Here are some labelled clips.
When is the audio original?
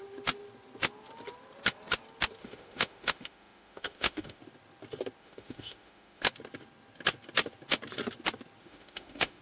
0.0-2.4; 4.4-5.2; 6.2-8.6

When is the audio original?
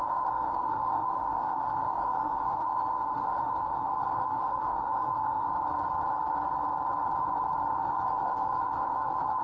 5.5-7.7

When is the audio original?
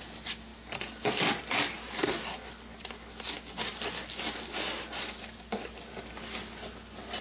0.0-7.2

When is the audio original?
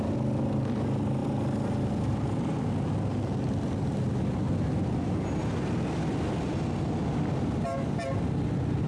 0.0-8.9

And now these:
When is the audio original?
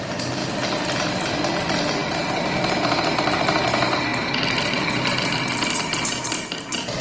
0.0-7.0